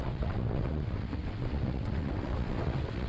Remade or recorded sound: remade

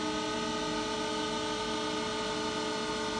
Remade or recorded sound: recorded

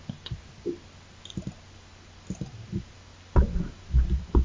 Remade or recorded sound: recorded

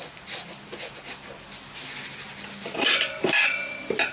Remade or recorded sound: recorded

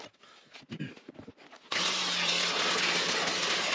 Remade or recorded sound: recorded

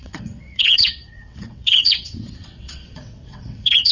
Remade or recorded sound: remade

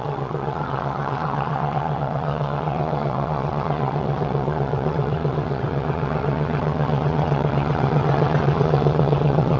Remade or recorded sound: remade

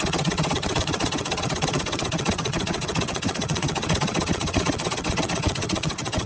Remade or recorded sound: remade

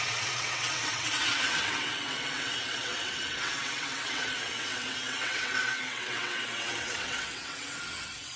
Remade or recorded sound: remade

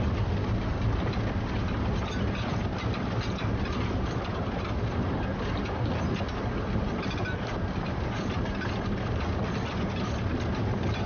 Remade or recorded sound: recorded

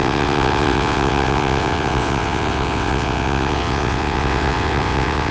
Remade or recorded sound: remade